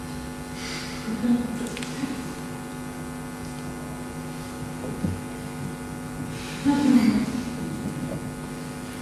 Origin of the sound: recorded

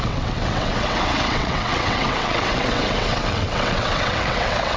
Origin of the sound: remade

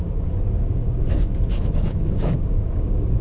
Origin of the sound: remade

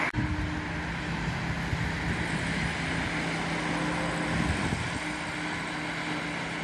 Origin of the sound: recorded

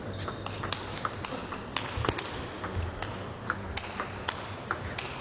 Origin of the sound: recorded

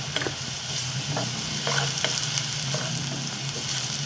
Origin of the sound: recorded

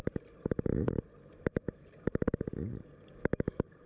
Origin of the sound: remade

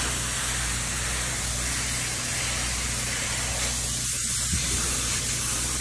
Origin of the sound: recorded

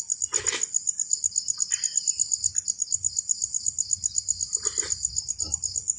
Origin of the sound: recorded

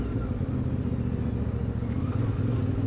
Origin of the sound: recorded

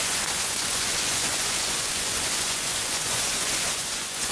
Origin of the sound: remade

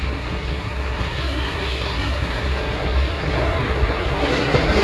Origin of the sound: remade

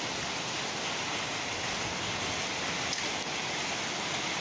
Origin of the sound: recorded